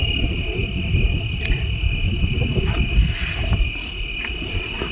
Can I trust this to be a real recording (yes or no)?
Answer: yes